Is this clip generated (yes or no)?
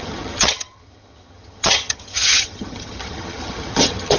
yes